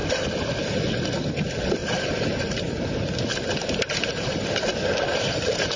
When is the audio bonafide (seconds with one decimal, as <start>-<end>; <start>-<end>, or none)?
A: 0.0-5.8